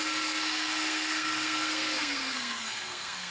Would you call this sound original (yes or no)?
no